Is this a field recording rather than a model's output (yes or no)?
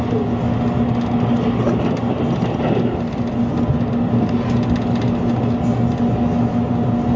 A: yes